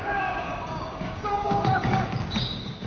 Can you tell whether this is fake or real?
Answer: fake